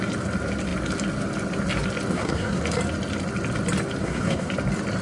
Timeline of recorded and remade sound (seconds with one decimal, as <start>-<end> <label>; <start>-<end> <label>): 0.0-2.1 recorded; 2.1-2.6 remade; 2.6-4.0 recorded; 4.0-4.5 remade; 4.5-5.0 recorded